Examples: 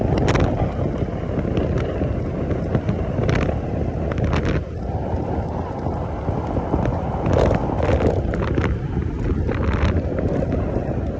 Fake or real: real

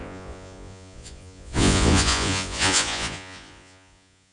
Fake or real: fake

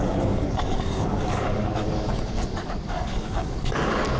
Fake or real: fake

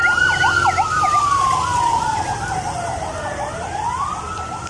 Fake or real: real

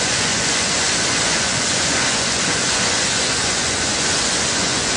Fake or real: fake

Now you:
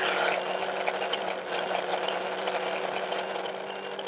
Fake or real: real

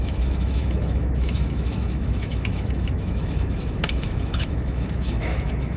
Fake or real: fake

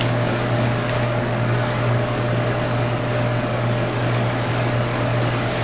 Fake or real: fake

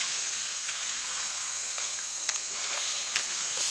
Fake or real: fake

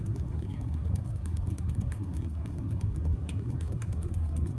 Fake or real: fake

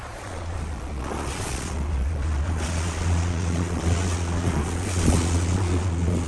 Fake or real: fake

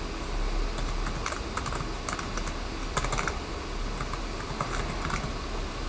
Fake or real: real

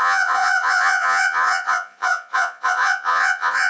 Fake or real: fake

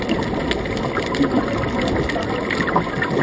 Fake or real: real